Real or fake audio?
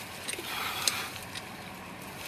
real